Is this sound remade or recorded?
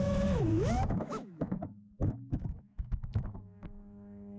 remade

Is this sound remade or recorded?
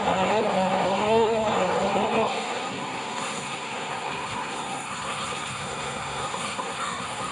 remade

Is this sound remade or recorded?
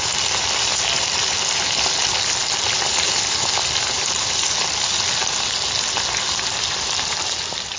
recorded